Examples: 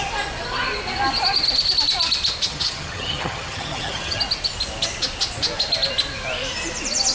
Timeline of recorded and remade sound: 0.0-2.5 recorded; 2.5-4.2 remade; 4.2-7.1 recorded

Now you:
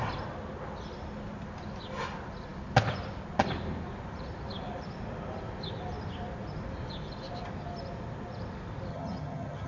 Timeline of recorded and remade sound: 0.0-8.9 recorded; 8.9-9.7 remade

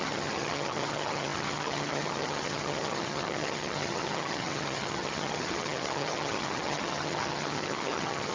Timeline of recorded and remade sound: 0.0-8.3 remade

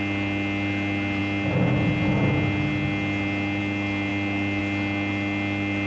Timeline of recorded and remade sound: 0.0-5.9 recorded

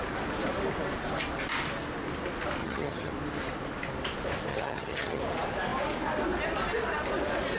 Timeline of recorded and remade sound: 0.0-2.6 recorded; 2.6-3.1 remade; 3.1-4.5 recorded; 4.5-5.2 remade; 5.2-7.6 recorded